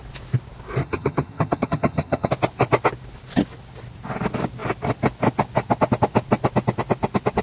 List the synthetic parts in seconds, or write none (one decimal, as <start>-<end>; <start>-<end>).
0.8-2.3